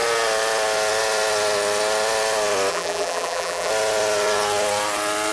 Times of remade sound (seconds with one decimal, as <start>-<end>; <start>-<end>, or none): 2.7-3.7